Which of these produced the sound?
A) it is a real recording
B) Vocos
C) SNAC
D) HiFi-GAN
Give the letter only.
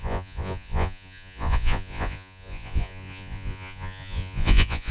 B